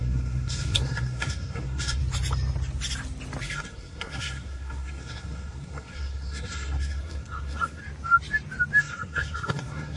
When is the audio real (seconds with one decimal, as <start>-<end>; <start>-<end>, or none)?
2.0-3.4; 7.8-8.8